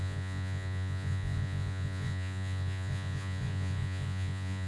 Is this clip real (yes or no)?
no